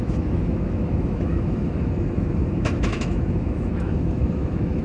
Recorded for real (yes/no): no